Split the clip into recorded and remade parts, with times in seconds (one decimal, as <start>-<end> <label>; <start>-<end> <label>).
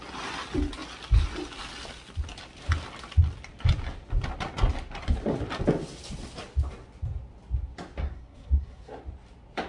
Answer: 0.0-8.0 recorded; 8.0-9.0 remade; 9.0-9.7 recorded